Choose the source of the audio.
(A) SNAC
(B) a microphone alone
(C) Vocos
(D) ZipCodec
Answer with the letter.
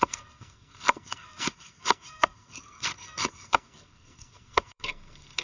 A